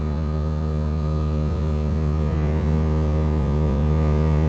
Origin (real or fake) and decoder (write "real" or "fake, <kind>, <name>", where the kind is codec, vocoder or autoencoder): fake, vocoder, Vocos